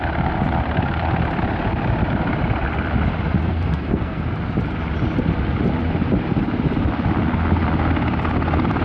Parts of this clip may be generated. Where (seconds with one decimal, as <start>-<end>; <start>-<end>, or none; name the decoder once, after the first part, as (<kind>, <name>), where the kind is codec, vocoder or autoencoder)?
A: 3.4-4.2 (codec, SNAC)